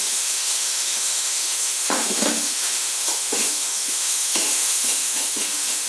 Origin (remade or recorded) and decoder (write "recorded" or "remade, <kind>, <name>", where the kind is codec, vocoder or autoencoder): remade, autoencoder, DAC-VAE